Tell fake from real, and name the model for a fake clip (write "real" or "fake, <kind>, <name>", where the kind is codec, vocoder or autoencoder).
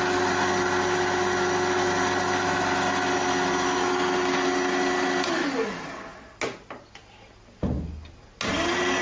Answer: real